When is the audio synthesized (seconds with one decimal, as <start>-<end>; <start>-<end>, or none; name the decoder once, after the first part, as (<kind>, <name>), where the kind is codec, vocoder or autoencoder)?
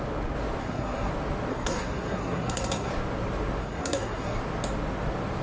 0.6-1.1 (codec, SNAC); 1.5-2.9; 3.6-4.4